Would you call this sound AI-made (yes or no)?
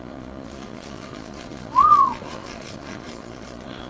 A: yes